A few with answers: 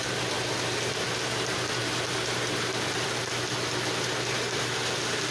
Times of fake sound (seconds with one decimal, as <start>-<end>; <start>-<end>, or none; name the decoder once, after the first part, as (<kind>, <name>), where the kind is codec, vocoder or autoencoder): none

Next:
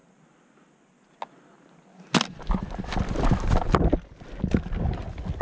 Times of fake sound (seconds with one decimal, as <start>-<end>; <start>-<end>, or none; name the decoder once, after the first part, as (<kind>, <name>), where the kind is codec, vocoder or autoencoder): none

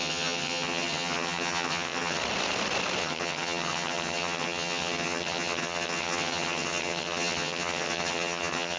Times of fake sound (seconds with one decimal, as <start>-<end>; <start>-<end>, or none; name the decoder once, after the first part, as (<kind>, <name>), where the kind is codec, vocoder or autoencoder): 0.0-2.2 (vocoder, HiFi-GAN); 3.0-8.8